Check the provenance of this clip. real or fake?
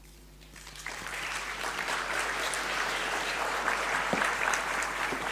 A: fake